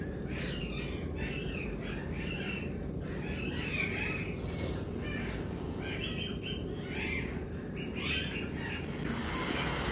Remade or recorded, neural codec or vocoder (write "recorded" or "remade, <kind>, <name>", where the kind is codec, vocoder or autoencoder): recorded